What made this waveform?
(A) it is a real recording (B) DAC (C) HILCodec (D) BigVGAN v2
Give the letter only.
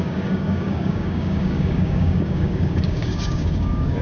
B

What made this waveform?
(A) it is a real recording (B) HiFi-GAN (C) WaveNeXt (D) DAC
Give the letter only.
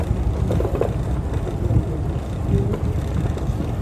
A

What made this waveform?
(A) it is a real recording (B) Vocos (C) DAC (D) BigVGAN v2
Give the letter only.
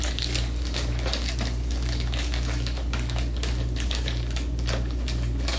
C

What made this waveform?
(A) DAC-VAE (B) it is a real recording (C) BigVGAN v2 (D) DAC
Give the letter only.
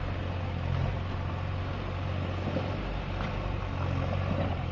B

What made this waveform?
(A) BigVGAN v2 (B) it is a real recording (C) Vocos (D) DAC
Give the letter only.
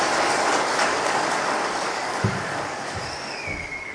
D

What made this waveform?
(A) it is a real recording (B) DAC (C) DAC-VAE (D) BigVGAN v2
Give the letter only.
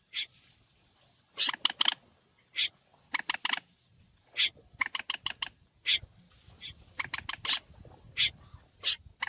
A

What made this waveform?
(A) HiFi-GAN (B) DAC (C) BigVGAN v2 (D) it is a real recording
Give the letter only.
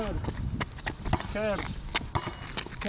D